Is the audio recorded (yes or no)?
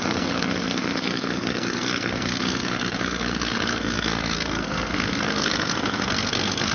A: no